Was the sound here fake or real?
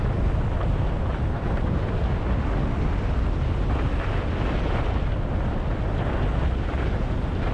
real